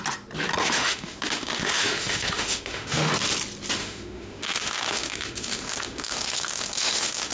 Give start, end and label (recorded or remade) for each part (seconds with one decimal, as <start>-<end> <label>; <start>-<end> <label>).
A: 0.0-0.6 recorded; 0.6-3.1 remade; 3.1-3.8 recorded; 3.8-7.3 remade